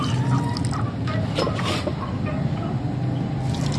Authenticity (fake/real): real